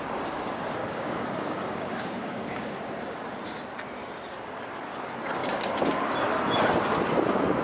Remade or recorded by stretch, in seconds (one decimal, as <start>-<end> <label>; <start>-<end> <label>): 0.0-0.8 recorded; 0.8-2.7 remade; 2.7-5.4 recorded; 5.4-6.1 remade; 6.1-7.6 recorded